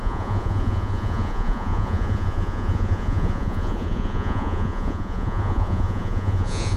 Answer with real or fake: fake